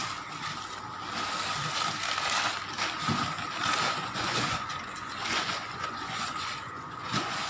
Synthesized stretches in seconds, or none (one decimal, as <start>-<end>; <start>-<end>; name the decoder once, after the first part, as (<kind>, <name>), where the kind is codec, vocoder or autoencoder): 3.8-7.5 (vocoder, Vocos)